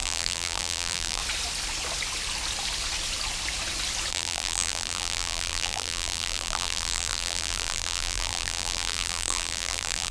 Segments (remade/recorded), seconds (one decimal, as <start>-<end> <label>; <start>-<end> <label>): 0.0-1.2 remade; 1.2-4.1 recorded; 4.1-10.1 remade